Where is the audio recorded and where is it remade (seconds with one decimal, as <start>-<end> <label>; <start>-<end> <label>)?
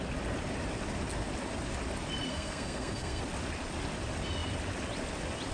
0.0-2.3 recorded; 2.3-3.2 remade; 3.2-5.5 recorded